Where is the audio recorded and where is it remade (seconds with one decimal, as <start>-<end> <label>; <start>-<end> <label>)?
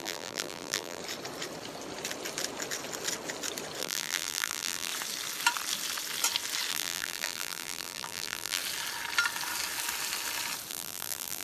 0.0-1.0 remade; 1.0-3.8 recorded; 3.8-4.9 remade; 4.9-6.7 recorded; 6.7-8.6 remade; 8.6-10.7 recorded; 10.7-11.4 remade